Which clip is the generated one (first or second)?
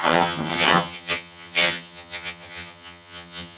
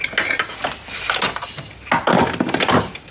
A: first